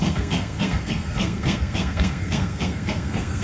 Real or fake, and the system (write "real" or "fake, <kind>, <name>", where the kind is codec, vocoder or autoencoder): fake, codec, SNAC